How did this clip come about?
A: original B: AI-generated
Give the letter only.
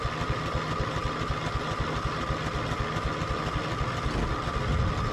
A